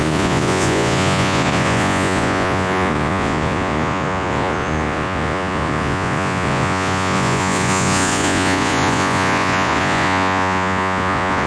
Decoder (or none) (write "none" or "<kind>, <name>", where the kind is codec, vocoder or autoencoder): vocoder, Vocos